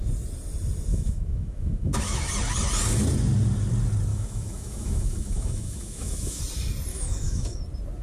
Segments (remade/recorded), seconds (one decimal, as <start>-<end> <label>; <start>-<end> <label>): 0.0-0.9 recorded; 0.9-2.3 remade; 2.3-4.1 recorded; 4.1-6.4 remade; 6.4-6.9 recorded; 6.9-7.6 remade; 7.6-8.0 recorded